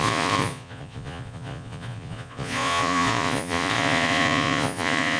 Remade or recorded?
remade